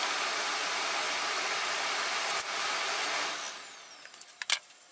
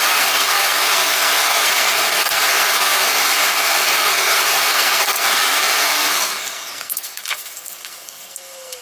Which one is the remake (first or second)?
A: second